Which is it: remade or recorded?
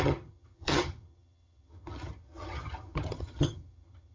remade